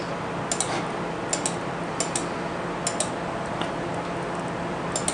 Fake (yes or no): no